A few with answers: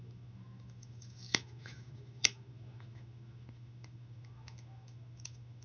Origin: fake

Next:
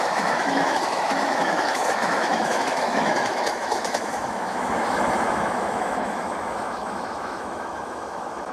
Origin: fake